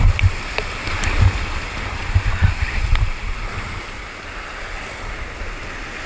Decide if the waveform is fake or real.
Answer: real